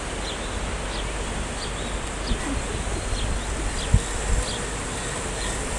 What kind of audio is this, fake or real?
real